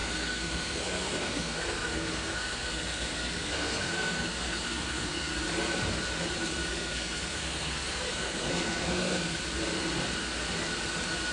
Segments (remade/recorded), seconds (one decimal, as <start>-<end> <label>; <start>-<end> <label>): 0.0-5.3 remade; 5.3-6.7 recorded; 6.7-9.4 remade; 9.4-11.3 recorded